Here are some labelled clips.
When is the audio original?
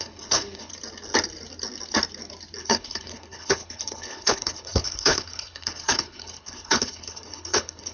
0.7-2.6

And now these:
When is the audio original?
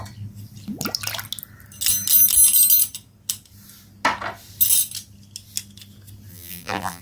0.0-6.3